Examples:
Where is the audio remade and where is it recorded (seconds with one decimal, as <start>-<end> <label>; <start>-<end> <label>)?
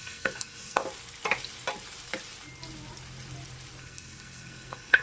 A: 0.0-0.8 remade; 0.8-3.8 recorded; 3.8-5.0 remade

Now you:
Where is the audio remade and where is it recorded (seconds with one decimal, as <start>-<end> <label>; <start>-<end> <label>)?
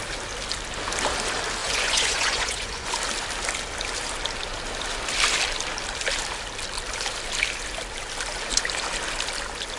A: 0.0-1.6 recorded; 1.6-2.9 remade; 2.9-9.8 recorded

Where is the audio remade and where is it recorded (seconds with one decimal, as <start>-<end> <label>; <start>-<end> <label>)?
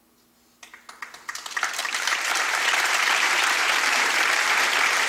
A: 0.0-1.8 recorded; 1.8-5.1 remade